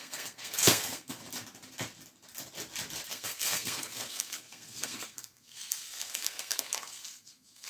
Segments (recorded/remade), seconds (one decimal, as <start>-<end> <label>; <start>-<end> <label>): 0.0-1.2 remade; 1.2-3.1 recorded; 3.1-7.7 remade